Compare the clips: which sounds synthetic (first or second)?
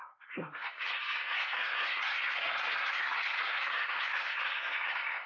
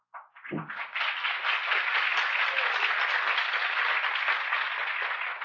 first